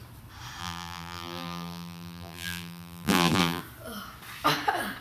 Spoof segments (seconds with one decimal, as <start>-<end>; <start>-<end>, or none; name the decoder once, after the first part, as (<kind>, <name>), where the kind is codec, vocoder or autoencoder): 0.6-3.6 (vocoder, BigVGAN v2)